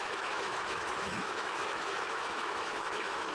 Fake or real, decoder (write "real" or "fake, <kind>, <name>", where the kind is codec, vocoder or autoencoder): fake, autoencoder, DAC-VAE